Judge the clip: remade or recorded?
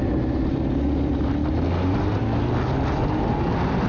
recorded